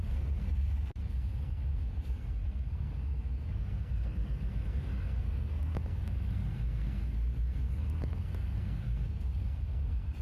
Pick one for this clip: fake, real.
fake